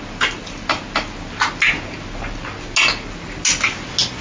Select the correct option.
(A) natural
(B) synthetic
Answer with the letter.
A